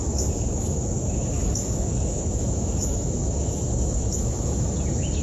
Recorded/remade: remade